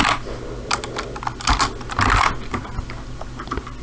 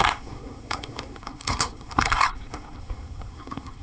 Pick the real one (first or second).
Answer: first